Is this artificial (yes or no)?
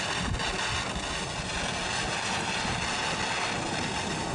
no